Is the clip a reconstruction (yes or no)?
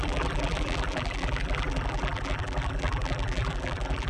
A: yes